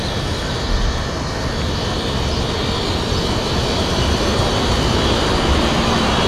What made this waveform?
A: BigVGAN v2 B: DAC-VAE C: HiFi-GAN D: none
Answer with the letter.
D